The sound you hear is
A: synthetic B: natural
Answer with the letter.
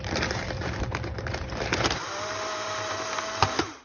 A